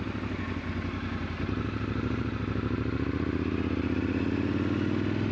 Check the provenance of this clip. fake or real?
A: real